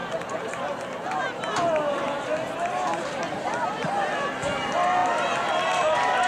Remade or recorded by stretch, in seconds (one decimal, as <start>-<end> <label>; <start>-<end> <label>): 0.0-6.3 recorded